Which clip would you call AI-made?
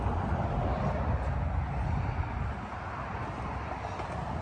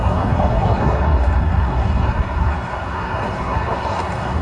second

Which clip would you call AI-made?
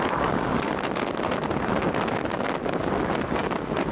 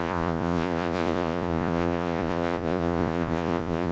second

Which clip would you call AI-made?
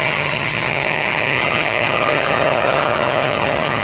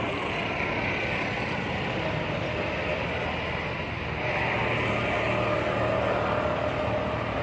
first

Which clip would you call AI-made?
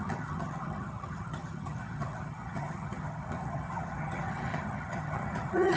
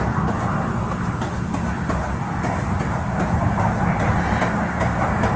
first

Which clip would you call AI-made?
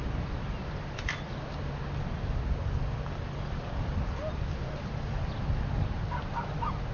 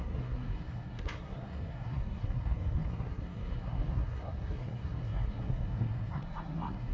second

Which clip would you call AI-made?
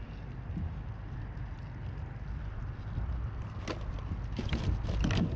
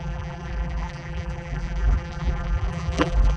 second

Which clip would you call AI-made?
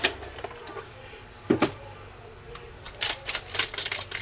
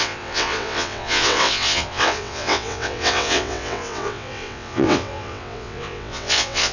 second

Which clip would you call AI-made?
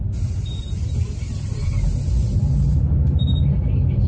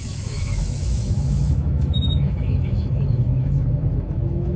second